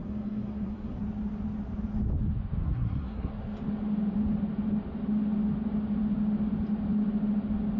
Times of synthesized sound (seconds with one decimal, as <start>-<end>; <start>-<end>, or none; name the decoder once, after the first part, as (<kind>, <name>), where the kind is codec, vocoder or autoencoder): 0.0-1.0 (codec, SNAC); 2.6-3.3